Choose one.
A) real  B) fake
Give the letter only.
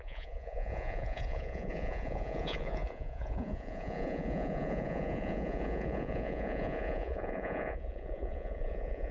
B